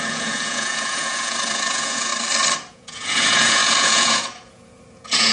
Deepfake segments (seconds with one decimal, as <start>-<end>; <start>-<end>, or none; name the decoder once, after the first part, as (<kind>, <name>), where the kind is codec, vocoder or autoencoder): 0.0-2.1 (vocoder, Vocos); 2.7-5.3